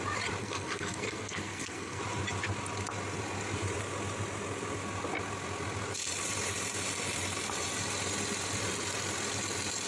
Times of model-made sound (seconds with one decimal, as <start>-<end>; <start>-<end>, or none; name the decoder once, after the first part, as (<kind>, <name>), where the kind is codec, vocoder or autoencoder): 0.4-2.0 (codec, SNAC)